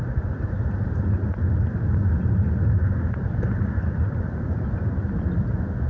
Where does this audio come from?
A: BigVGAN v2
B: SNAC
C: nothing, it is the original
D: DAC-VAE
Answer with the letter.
C